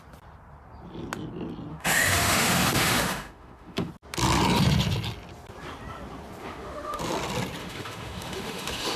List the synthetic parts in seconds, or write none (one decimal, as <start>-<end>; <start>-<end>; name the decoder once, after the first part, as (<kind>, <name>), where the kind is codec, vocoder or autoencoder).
1.7-3.9 (autoencoder, DAC-VAE); 6.4-7.0; 7.6-9.0